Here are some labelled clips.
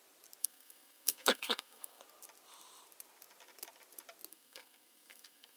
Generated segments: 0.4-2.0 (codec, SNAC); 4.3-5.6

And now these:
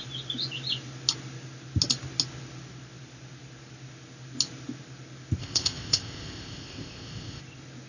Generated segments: 5.4-7.4 (codec, ZipCodec)

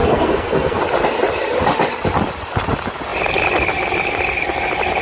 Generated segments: 0.0-0.8 (codec, SNAC)

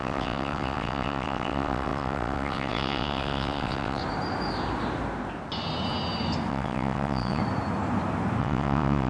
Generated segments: 0.0-4.0 (vocoder, WaveNeXt); 6.5-7.4; 8.4-9.1